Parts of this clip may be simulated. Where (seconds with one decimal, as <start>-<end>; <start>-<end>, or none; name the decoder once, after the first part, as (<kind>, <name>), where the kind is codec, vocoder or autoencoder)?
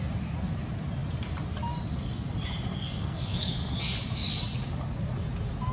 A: 2.7-3.7 (codec, SNAC)